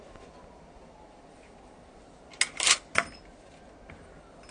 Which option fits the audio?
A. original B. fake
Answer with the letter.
A